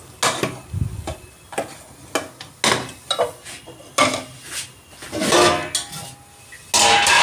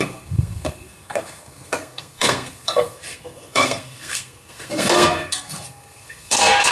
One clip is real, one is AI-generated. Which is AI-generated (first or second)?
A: second